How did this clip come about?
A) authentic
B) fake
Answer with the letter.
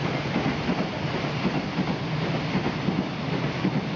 A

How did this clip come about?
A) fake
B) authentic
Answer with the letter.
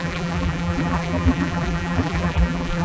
A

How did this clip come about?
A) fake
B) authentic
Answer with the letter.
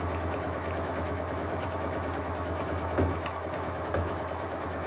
A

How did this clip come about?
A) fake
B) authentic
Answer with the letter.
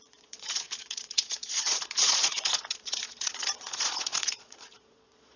A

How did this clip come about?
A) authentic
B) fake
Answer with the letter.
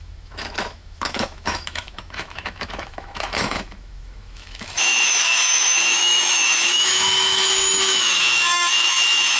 B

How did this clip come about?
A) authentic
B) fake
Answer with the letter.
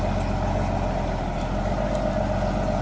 A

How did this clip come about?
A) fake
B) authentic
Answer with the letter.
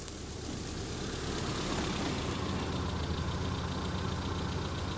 B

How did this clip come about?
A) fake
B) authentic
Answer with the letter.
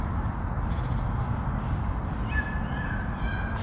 B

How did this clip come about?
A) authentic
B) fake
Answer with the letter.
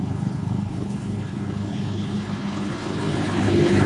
B